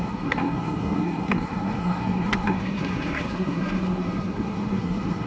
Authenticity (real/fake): fake